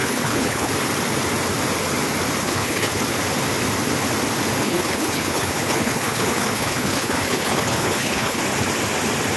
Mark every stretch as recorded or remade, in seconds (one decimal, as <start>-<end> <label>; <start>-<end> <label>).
0.0-0.7 remade; 0.7-2.4 recorded; 2.4-3.0 remade; 3.0-4.6 recorded; 4.6-8.4 remade; 8.4-9.4 recorded